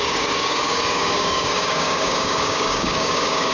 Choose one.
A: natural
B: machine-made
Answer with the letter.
B